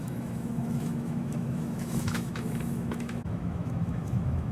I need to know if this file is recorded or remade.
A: remade